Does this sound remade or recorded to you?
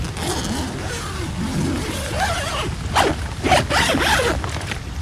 recorded